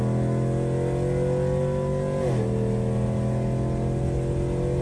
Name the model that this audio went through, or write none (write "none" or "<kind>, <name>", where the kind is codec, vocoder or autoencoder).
none